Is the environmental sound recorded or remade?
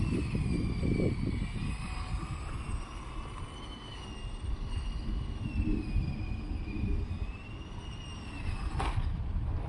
recorded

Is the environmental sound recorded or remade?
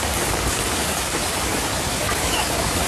remade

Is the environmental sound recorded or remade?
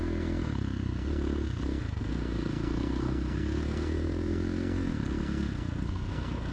remade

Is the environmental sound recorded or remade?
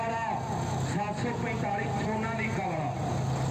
recorded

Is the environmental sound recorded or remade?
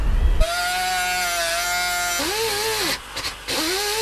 recorded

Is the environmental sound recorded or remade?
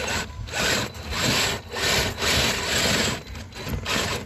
recorded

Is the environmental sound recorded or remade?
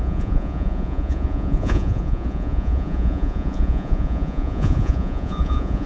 remade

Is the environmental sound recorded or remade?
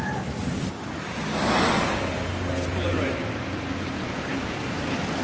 remade